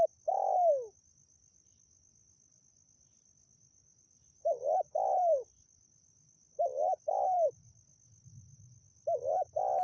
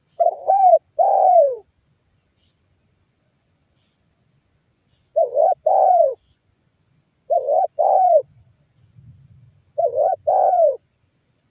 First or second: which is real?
first